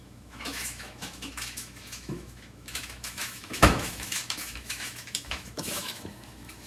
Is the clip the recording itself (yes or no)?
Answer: no